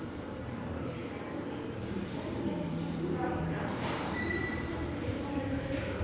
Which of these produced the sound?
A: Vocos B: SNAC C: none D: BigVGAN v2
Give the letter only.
D